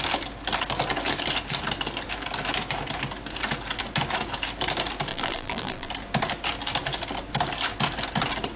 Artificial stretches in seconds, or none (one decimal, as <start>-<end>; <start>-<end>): 5.1-5.9